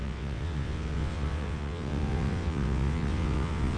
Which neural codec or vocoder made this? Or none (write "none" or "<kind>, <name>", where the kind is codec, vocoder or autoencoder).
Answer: vocoder, WaveNeXt